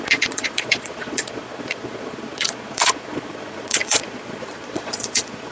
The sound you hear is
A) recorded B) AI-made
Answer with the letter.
B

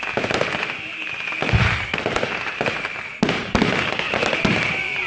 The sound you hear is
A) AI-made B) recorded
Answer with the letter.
B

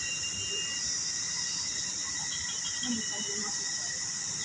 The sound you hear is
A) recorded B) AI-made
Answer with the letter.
A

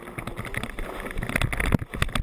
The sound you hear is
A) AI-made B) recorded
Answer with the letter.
B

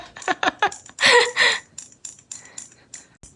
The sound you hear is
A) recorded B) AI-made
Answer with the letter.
A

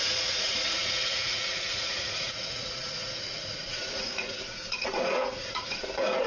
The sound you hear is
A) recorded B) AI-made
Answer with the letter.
B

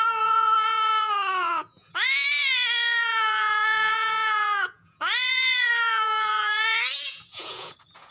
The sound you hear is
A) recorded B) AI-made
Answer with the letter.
B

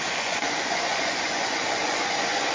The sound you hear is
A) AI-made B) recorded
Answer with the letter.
A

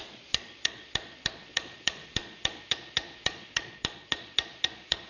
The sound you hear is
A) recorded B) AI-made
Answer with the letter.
B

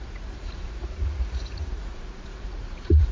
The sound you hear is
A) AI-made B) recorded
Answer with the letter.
A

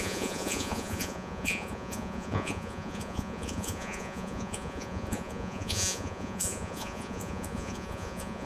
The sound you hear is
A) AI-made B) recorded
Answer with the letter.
A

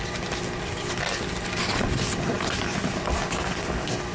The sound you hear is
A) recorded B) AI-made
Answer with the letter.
A